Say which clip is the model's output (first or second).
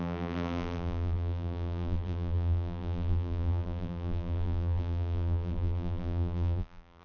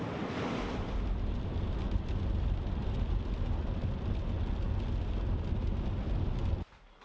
first